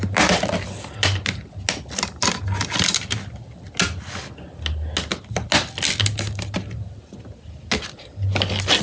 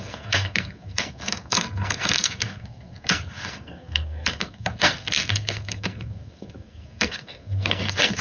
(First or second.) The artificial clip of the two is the second